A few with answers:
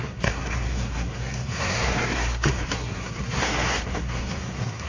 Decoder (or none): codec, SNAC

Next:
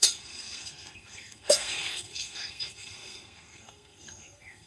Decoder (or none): codec, SNAC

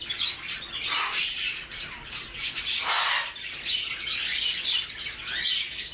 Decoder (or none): none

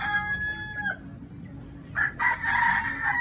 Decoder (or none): none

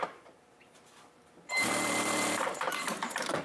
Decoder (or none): vocoder, BigVGAN v2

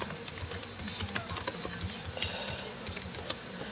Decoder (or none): none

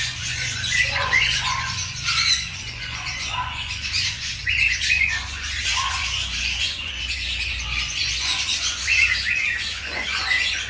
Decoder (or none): vocoder, Vocos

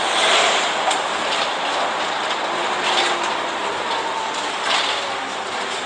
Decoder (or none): none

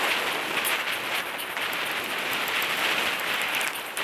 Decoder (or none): none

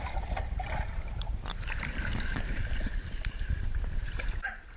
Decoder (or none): none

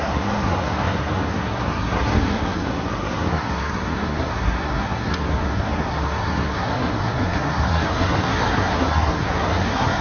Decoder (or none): codec, SNAC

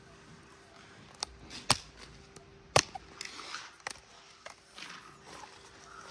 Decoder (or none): none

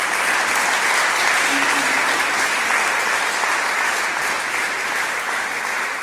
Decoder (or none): none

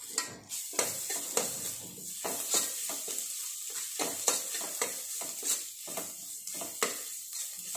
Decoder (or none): none